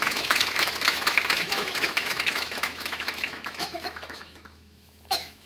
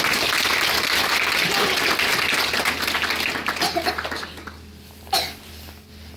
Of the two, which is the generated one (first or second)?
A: first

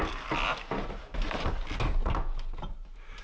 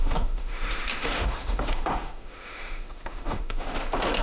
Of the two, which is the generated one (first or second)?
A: second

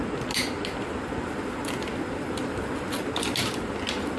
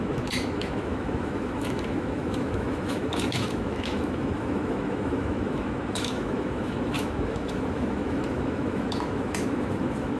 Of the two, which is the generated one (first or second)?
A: second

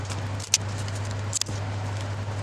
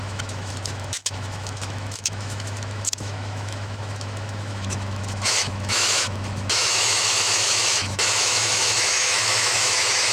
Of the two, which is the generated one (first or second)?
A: second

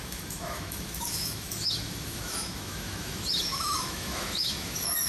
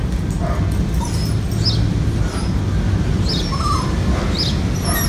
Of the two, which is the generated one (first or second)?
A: first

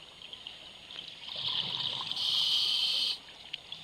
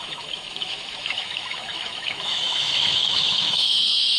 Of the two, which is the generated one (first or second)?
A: second